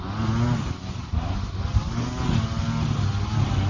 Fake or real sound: real